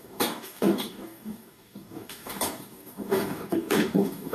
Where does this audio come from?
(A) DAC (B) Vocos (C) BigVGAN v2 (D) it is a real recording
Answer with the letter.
A